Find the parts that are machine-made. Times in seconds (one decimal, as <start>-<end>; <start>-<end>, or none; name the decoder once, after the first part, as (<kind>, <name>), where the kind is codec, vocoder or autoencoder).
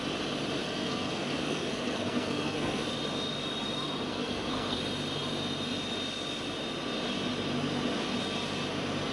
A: 0.6-2.9 (codec, SNAC); 4.1-4.8